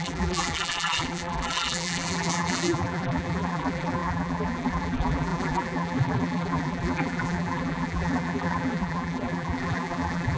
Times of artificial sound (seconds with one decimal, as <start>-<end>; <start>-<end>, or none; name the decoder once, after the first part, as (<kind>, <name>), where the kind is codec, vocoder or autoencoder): 0.0-10.4 (vocoder, BigVGAN v2)